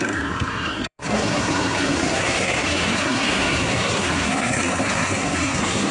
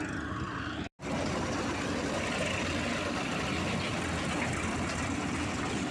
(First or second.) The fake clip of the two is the first